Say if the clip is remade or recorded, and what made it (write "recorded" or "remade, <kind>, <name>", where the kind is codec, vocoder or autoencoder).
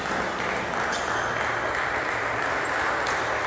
recorded